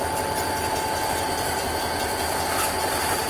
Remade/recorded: recorded